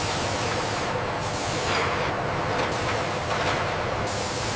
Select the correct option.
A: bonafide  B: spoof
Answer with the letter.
A